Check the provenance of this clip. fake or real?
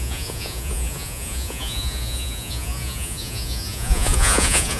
fake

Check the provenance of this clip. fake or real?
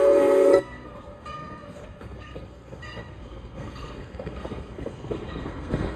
fake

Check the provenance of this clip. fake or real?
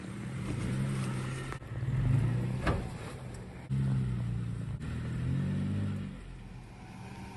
real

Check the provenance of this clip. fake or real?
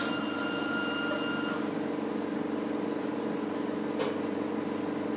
real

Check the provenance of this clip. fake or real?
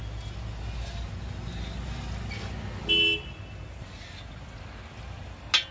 real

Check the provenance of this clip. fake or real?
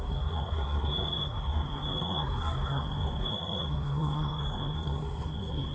fake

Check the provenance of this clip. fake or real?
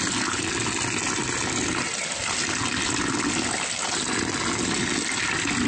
real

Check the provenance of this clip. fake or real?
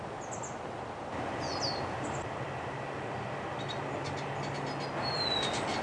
real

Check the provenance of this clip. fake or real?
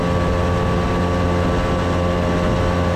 real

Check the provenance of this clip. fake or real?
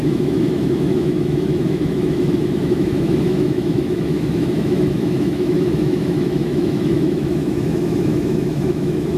fake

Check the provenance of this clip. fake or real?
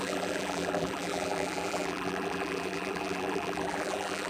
fake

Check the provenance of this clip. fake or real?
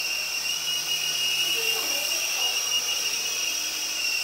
real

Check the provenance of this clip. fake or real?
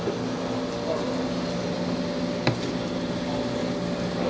real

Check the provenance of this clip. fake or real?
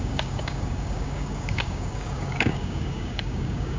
fake